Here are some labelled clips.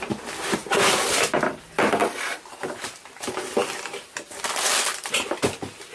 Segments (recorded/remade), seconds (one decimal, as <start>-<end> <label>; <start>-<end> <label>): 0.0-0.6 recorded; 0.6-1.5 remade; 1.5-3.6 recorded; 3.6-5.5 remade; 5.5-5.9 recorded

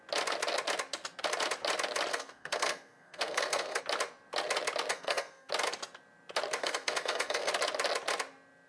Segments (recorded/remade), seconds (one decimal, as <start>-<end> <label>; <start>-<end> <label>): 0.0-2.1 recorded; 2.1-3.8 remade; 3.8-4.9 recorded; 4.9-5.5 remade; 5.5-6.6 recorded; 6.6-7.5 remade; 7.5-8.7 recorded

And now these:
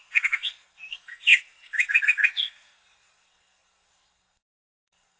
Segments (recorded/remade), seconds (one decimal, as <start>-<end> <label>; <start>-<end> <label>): 0.0-5.2 remade